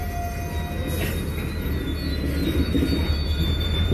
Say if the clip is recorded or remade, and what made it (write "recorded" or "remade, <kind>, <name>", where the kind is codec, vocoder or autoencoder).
recorded